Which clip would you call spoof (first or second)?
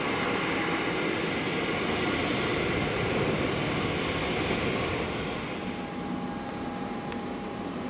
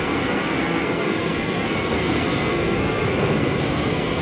second